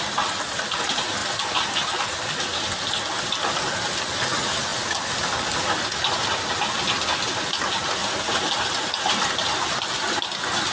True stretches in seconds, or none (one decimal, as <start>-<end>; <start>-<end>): 0.0-10.7